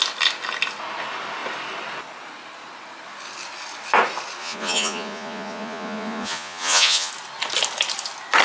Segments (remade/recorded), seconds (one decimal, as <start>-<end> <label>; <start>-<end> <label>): 0.0-4.4 recorded; 4.4-7.1 remade; 7.1-8.4 recorded